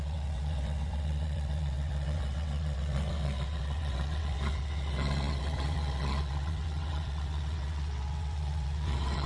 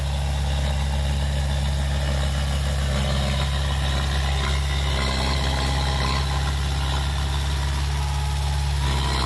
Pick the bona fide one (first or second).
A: second